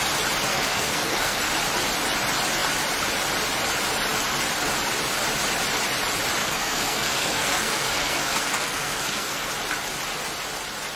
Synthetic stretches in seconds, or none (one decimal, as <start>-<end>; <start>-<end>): 0.5-1.4; 6.4-9.5